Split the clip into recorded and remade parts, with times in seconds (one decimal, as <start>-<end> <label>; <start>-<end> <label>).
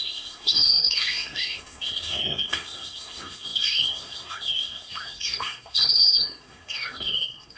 0.0-7.6 remade